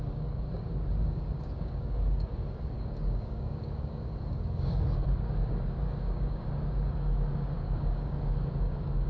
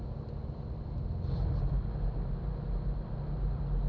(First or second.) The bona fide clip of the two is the second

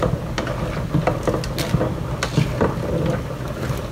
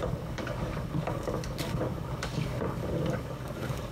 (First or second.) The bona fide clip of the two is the first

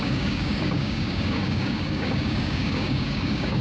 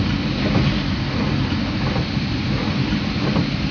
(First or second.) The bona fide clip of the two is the second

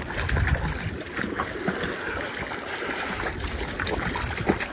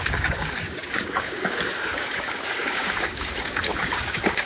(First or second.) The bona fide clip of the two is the first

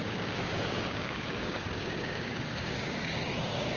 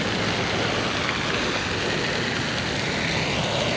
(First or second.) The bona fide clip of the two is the second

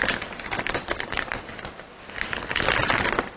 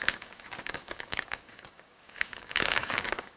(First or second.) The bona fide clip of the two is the first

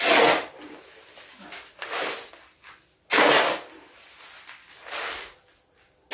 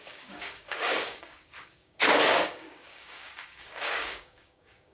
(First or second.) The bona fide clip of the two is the first